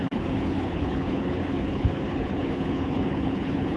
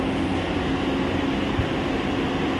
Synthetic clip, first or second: first